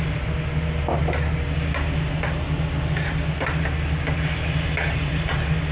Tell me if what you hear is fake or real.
real